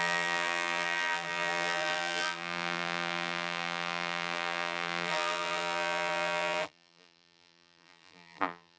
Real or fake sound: fake